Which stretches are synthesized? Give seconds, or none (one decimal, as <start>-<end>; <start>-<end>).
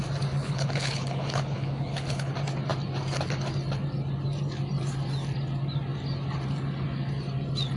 0.4-2.3